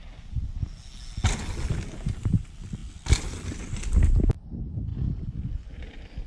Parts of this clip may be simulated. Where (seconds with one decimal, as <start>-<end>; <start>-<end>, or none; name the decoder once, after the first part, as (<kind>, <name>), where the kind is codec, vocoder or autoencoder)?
none